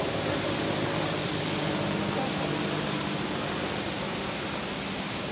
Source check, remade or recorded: recorded